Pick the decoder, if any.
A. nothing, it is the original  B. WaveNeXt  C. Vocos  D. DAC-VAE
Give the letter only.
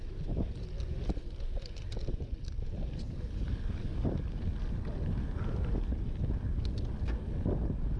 A